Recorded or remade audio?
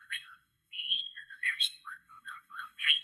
remade